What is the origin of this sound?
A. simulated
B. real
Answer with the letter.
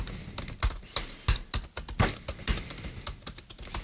B